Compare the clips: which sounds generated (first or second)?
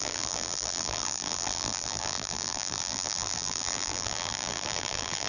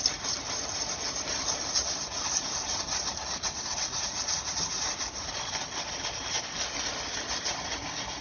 first